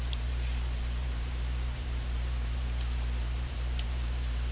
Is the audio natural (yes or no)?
no